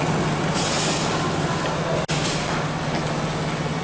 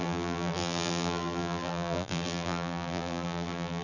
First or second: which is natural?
first